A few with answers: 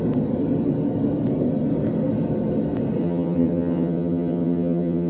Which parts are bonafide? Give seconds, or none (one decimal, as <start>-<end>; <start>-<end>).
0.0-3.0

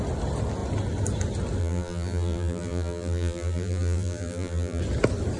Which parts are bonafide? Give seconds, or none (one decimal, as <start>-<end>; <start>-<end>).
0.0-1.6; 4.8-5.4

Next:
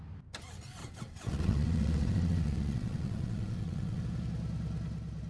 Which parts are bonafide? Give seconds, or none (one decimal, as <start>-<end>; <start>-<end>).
0.0-0.8; 4.0-5.3

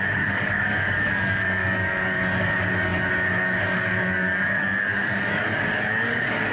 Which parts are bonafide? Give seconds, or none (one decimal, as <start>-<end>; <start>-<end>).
none

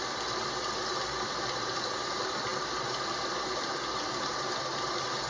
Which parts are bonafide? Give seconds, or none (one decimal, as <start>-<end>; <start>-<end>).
0.0-5.3

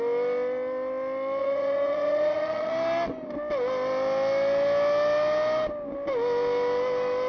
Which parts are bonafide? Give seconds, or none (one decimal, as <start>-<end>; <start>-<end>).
0.0-1.4; 2.7-7.3

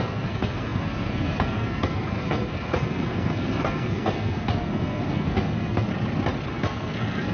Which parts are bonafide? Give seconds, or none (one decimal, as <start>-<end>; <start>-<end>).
5.9-6.5